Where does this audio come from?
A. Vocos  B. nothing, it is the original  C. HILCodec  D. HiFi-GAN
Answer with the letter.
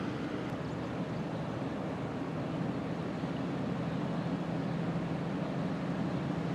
B